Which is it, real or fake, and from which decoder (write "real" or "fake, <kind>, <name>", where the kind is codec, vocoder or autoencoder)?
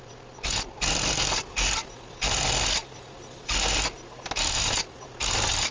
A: real